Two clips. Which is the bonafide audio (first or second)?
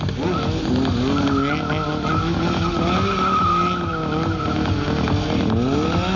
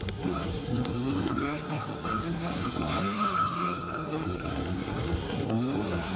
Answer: first